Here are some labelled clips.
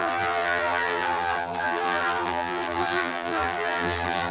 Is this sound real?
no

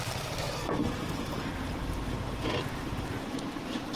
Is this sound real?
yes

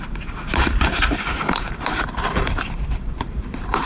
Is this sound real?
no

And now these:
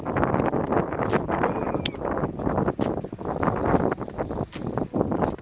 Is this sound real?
yes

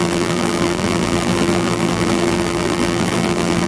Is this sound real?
no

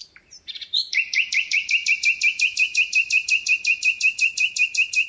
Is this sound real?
no